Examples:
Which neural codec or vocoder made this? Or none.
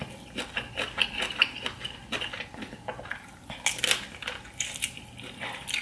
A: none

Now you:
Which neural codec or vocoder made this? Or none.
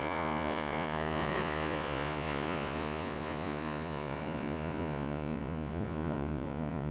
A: vocoder, Vocos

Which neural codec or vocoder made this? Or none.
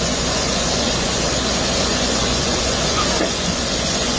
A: vocoder, Vocos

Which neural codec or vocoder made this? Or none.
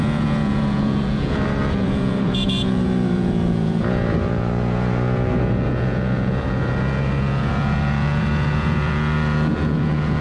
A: vocoder, Vocos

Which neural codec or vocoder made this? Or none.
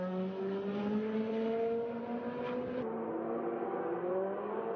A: none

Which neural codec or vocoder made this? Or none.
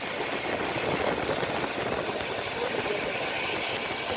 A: none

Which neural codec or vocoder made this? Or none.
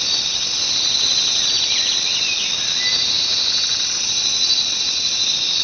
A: none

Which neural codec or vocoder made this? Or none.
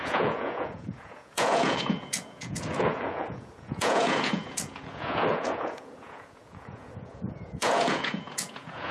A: vocoder, Vocos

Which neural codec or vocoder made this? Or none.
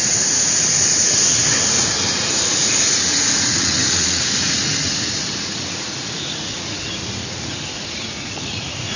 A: vocoder, Vocos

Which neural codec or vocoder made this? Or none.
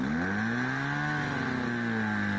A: none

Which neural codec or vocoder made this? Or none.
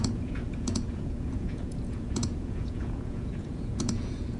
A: vocoder, Vocos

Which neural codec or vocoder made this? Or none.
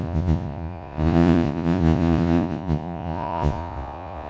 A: vocoder, Vocos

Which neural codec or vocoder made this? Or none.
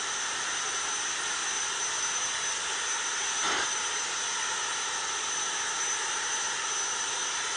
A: none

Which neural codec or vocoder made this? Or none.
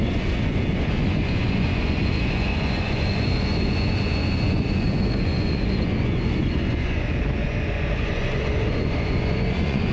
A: vocoder, Vocos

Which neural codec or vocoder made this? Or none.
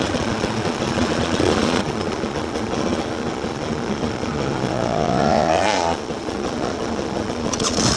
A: vocoder, Vocos